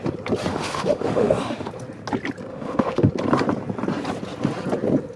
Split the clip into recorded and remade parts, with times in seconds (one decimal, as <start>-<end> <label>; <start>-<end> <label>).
0.0-0.5 recorded; 0.5-1.7 remade; 1.7-2.5 recorded; 2.5-3.1 remade; 3.1-5.2 recorded